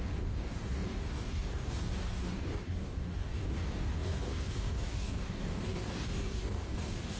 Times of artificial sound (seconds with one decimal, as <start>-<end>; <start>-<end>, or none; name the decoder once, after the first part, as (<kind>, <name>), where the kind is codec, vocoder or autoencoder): 0.0-7.2 (codec, DAC)